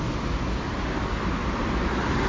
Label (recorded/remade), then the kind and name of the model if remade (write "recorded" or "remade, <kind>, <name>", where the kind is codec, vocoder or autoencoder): recorded